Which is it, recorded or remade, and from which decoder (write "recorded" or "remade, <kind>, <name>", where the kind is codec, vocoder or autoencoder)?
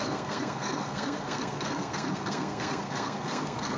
remade, codec, SNAC